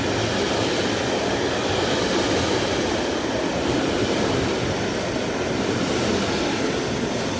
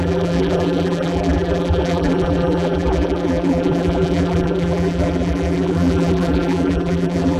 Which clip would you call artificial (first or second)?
second